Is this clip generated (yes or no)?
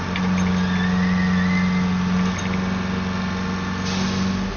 no